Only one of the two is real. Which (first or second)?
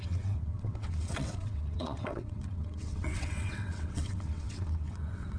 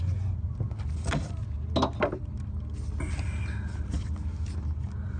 second